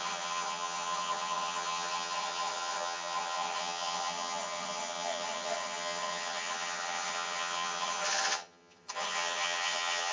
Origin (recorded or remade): remade